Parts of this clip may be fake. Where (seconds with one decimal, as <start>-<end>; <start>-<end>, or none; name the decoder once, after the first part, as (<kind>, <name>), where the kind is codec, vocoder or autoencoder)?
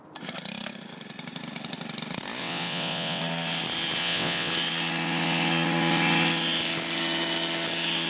2.4-3.2 (vocoder, WaveNeXt); 4.0-4.5